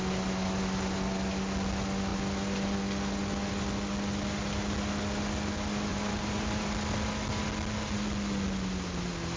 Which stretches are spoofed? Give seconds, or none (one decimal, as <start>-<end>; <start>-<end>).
5.9-6.7